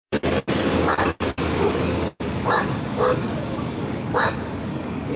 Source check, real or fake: fake